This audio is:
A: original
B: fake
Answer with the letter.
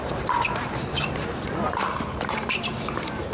B